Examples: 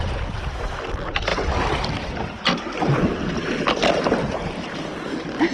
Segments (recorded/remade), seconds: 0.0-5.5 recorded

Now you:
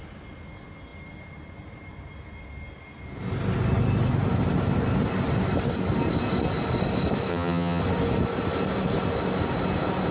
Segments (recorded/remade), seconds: 0.0-7.3 recorded; 7.3-7.8 remade; 7.8-10.1 recorded

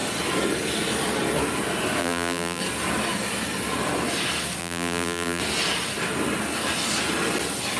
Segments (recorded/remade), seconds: 0.0-2.0 recorded; 2.0-2.6 remade; 2.6-4.6 recorded; 4.6-5.4 remade; 5.4-7.8 recorded